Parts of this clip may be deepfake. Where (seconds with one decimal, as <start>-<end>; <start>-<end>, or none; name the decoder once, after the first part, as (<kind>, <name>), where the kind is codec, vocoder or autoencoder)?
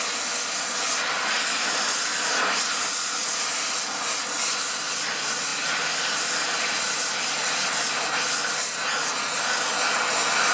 none